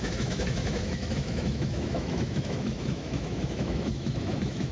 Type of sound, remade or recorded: remade